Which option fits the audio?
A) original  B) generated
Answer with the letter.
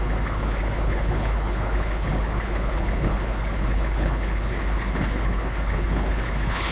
B